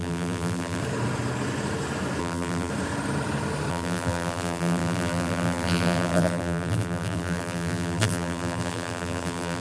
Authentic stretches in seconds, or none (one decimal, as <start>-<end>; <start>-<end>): 0.8-2.2; 2.7-3.7